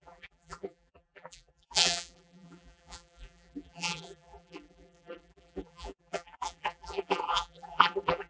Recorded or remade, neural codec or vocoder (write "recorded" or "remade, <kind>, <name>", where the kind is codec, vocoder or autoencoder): remade, vocoder, BigVGAN v2